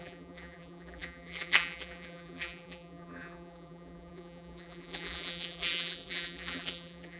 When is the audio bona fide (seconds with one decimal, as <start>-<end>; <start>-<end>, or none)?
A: none